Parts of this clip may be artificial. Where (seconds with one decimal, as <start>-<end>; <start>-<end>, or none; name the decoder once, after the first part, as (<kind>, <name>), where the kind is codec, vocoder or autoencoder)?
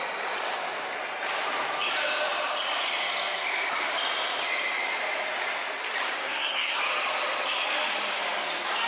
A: 6.2-6.8 (codec, SNAC)